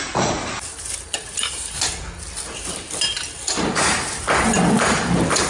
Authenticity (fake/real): real